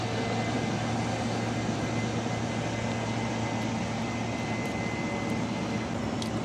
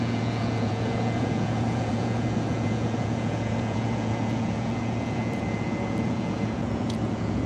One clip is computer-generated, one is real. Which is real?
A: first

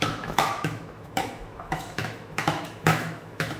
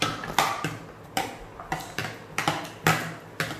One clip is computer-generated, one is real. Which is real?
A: second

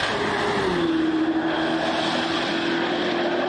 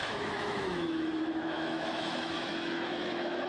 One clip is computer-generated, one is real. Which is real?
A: first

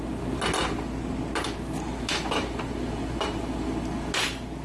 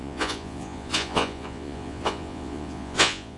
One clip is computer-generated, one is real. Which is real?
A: first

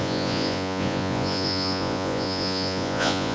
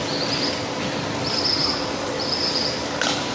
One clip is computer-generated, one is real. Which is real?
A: second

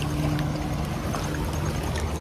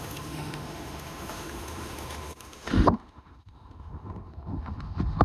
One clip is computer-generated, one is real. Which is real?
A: first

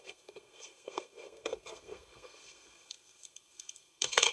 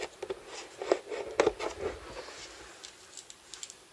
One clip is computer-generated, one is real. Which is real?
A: second